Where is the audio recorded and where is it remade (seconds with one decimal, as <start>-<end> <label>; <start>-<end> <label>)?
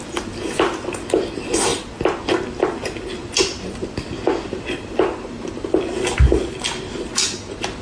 0.0-7.8 recorded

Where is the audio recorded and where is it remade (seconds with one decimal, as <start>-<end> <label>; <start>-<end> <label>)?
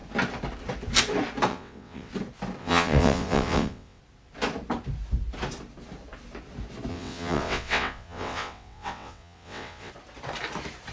0.0-1.5 recorded; 1.5-2.1 remade; 2.1-2.6 recorded; 2.6-4.0 remade; 4.0-6.9 recorded; 6.9-9.9 remade; 9.9-10.9 recorded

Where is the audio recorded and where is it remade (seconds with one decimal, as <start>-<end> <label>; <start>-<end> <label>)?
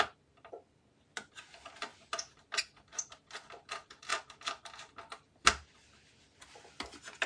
0.0-7.3 recorded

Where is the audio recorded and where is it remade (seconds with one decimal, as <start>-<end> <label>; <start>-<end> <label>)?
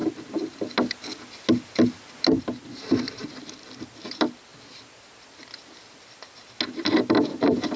0.0-7.8 recorded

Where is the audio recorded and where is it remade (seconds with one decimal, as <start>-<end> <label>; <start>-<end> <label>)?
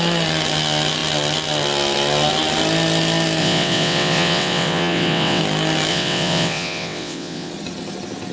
0.0-3.4 recorded; 3.4-5.4 remade; 5.4-5.9 recorded; 5.9-7.5 remade; 7.5-8.3 recorded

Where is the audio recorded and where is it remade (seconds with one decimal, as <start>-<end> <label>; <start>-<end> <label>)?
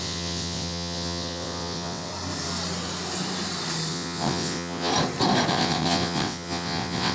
0.0-2.1 remade; 2.1-3.9 recorded; 3.9-4.9 remade; 4.9-5.5 recorded; 5.5-7.1 remade